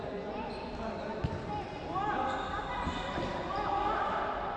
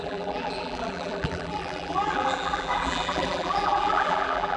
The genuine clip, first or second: first